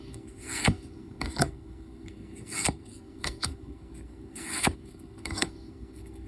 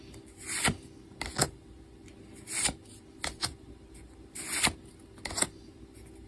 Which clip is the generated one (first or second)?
first